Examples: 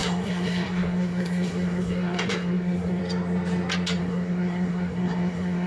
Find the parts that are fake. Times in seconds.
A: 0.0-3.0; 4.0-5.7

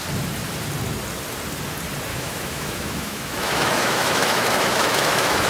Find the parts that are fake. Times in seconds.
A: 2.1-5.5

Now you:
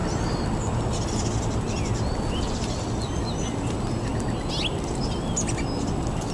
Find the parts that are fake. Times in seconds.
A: none